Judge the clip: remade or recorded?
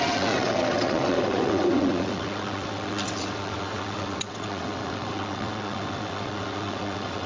remade